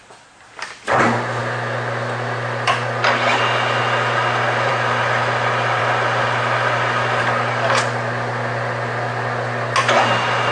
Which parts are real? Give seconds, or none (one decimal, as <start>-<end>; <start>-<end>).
0.0-10.5